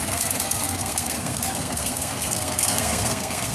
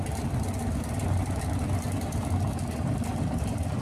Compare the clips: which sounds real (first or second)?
second